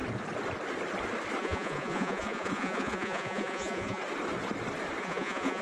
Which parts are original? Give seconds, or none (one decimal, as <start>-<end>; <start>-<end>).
0.0-1.4; 4.0-5.0

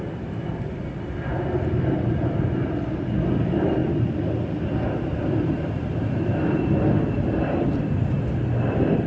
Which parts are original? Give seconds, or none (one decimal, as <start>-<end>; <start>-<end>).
none